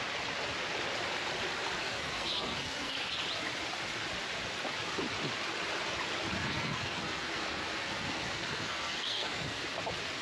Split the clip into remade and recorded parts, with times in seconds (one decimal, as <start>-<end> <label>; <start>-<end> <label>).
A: 0.0-1.8 recorded; 1.8-3.2 remade; 3.2-6.4 recorded; 6.4-9.6 remade; 9.6-10.2 recorded

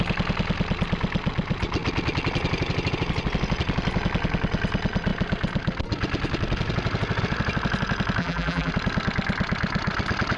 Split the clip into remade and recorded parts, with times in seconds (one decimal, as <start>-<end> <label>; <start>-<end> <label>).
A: 0.0-8.2 recorded; 8.2-8.7 remade; 8.7-10.4 recorded

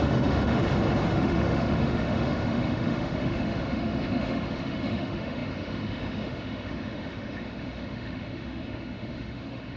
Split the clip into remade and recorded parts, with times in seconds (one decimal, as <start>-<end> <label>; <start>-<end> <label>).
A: 0.0-0.6 remade; 0.6-1.1 recorded; 1.1-9.8 remade

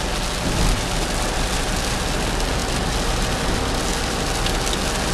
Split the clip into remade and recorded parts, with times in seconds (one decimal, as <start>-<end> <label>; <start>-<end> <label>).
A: 0.0-5.1 recorded

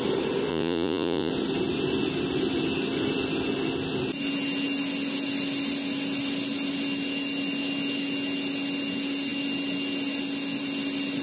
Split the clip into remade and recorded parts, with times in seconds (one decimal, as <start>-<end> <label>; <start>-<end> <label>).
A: 0.0-0.5 recorded; 0.5-1.3 remade; 1.3-11.2 recorded

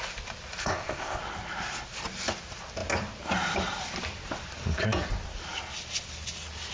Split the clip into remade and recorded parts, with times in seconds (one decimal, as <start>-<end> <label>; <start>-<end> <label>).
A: 0.0-0.6 recorded; 0.6-1.2 remade; 1.2-6.7 recorded

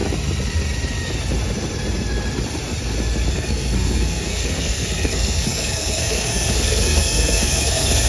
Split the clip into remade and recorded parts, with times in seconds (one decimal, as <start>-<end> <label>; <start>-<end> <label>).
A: 0.0-3.3 recorded; 3.3-8.1 remade

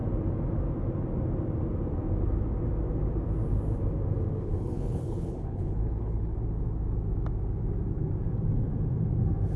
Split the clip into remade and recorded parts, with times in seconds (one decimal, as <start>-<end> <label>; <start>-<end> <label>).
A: 0.0-4.4 recorded; 4.4-6.3 remade; 6.3-9.6 recorded